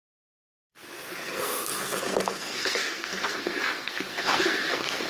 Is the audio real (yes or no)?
no